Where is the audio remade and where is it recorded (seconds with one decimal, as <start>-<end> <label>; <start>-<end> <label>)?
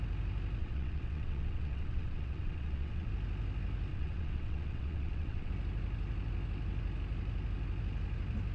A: 0.0-0.6 recorded; 0.6-3.1 remade; 3.1-3.9 recorded; 3.9-5.5 remade; 5.5-8.5 recorded